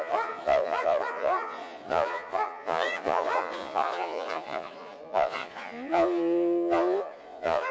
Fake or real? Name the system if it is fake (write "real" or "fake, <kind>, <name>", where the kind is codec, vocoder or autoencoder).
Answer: fake, vocoder, Vocos